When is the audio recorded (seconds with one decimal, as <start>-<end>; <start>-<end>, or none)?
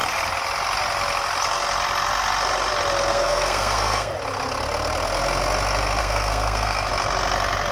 0.0-3.1; 4.1-6.0; 6.9-7.7